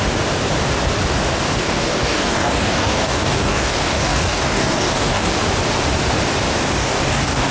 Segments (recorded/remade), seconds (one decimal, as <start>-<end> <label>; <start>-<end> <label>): 0.0-1.6 recorded; 1.6-5.3 remade; 5.3-6.8 recorded; 6.8-7.5 remade